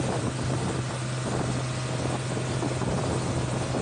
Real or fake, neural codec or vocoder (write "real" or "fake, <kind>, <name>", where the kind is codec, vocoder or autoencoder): real